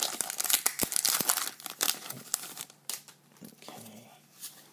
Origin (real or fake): fake